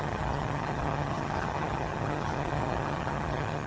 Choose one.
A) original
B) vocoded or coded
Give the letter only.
B